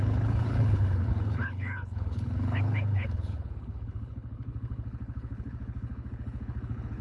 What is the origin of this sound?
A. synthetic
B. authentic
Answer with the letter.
A